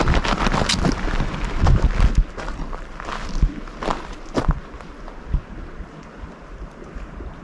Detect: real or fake real